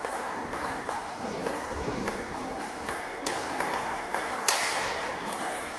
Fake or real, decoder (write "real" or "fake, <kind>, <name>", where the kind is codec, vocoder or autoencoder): fake, codec, SNAC